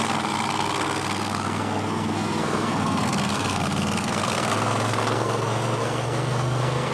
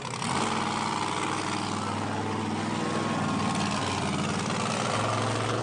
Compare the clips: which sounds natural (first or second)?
second